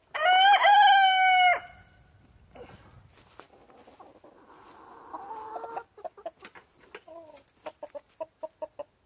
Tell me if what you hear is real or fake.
real